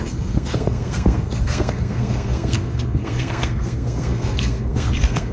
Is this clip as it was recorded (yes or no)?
no